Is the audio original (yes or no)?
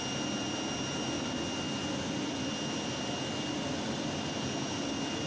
yes